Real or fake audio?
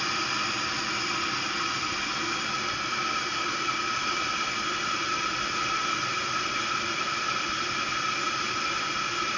real